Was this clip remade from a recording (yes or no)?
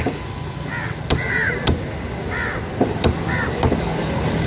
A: no